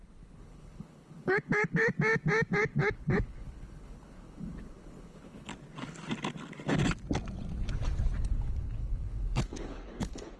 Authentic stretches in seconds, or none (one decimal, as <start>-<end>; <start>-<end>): 1.9-2.6; 5.5-8.2